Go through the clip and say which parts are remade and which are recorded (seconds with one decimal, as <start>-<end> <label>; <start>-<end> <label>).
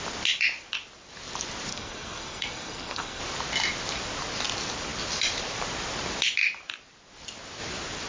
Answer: 0.0-1.7 recorded; 1.7-3.2 remade; 3.2-8.1 recorded